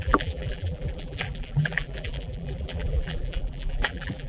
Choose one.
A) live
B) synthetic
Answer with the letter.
B